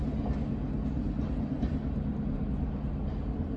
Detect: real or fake real